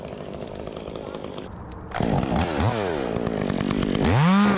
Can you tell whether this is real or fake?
real